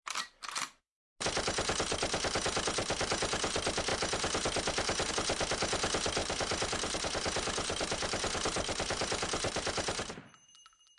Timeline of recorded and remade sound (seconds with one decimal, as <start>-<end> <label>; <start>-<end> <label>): 0.0-6.2 recorded; 6.2-10.2 remade; 10.2-11.0 recorded